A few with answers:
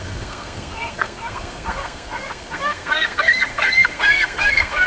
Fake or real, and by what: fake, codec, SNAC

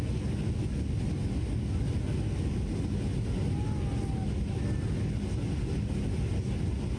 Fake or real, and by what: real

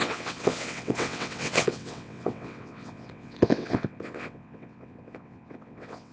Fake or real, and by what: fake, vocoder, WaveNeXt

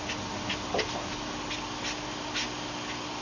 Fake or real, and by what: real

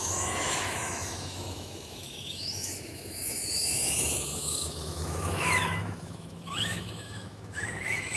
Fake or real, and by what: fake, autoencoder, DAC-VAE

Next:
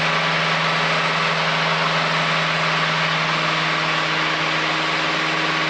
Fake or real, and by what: real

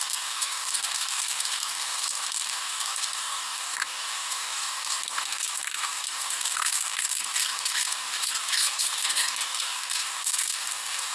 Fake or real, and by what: fake, codec, DAC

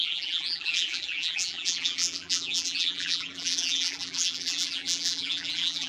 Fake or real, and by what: fake, vocoder, BigVGAN v2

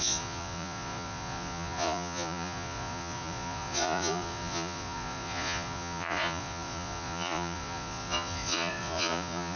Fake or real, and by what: fake, vocoder, Vocos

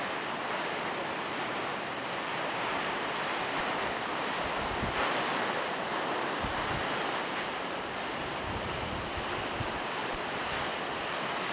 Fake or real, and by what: real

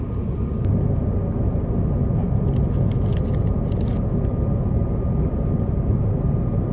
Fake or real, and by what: real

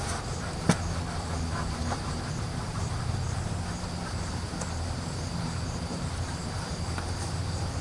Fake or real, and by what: fake, vocoder, BigVGAN v2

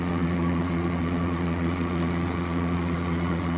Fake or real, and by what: fake, vocoder, Vocos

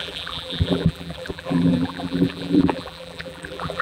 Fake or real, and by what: fake, vocoder, BigVGAN v2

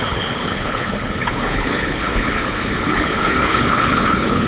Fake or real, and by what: fake, codec, HILCodec